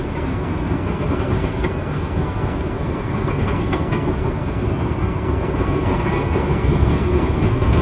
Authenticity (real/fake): fake